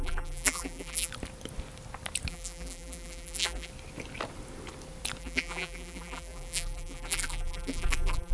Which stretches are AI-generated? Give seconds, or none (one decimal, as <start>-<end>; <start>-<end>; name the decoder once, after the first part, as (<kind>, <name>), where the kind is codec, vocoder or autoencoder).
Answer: 0.0-1.1 (vocoder, BigVGAN v2); 2.3-3.7; 5.2-8.3